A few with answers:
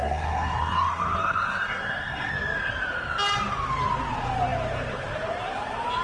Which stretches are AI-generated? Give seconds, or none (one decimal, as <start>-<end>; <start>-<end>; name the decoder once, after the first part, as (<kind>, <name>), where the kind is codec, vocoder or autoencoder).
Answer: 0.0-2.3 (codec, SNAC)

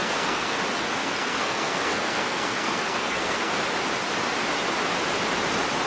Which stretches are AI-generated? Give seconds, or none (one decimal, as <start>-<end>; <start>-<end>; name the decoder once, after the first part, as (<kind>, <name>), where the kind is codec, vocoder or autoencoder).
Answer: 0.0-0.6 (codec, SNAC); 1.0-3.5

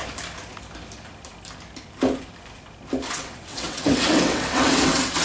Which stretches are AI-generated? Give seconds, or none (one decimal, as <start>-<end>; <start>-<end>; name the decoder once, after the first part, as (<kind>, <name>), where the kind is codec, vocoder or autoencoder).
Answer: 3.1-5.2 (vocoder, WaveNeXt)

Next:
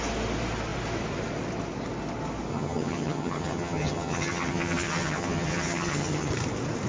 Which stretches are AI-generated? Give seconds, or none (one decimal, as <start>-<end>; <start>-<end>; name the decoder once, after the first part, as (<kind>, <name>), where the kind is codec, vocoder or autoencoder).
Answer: 2.5-6.3 (vocoder, HiFi-GAN)

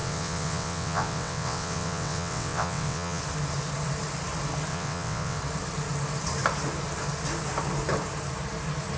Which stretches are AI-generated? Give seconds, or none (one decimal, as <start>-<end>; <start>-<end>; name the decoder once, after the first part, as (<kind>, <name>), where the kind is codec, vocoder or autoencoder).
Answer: 0.0-3.2 (vocoder, WaveNeXt); 4.7-5.4

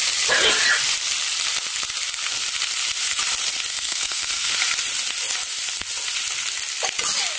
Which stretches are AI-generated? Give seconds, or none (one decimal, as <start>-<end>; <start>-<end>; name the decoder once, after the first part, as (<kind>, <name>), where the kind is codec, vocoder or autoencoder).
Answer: 3.7-4.5 (codec, SNAC)